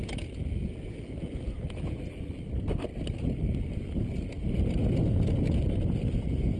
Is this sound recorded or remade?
recorded